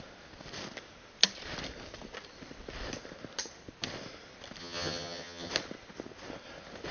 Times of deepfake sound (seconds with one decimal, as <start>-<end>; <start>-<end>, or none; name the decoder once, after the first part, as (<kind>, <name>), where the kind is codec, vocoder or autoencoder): 4.6-5.5 (vocoder, HiFi-GAN)